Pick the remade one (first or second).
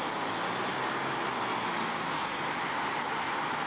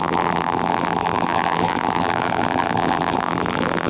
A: second